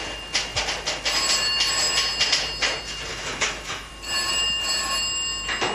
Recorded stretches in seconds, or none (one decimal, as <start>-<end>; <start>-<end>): 0.0-3.1; 3.9-5.7